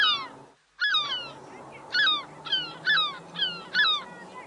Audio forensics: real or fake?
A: real